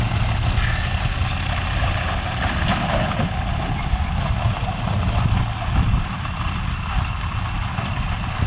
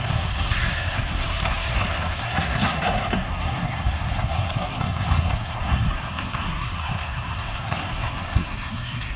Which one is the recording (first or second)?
first